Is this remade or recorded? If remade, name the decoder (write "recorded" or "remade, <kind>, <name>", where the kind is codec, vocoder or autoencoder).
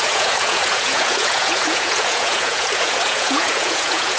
remade, vocoder, Vocos